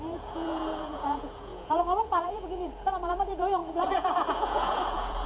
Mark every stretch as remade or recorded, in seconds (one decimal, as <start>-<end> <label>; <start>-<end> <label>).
0.0-5.3 remade